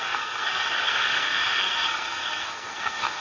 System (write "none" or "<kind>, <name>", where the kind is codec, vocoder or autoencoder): codec, SNAC